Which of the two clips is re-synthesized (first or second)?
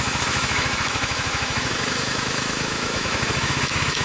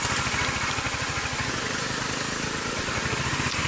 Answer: first